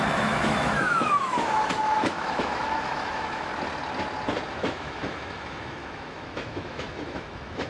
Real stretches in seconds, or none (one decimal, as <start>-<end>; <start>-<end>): 3.5-4.5